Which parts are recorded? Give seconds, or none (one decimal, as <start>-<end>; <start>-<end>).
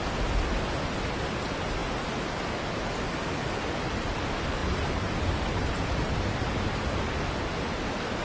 0.0-4.6; 6.3-8.2